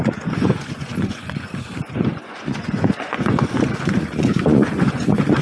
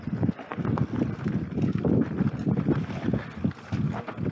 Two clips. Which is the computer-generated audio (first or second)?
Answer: first